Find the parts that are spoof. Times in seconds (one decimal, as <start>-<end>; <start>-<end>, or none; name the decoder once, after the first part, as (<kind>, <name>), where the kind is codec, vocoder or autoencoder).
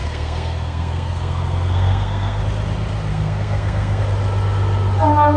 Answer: 0.0-2.4 (codec, SNAC); 3.1-4.0